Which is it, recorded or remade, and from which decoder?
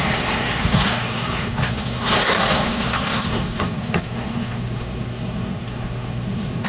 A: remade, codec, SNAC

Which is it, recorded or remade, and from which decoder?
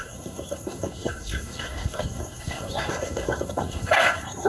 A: remade, codec, SNAC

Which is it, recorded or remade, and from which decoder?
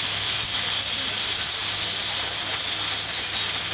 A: recorded